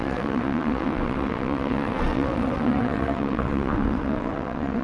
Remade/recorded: remade